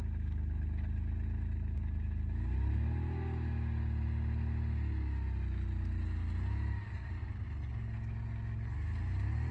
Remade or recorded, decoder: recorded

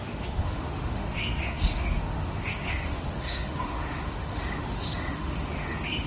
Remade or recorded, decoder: remade, autoencoder, DAC-VAE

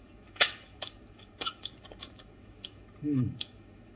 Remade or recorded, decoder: remade, autoencoder, DAC-VAE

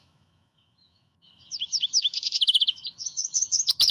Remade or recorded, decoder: remade, autoencoder, DAC-VAE